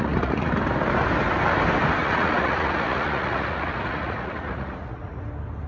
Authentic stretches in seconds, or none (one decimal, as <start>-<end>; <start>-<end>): 0.5-2.0; 5.2-5.7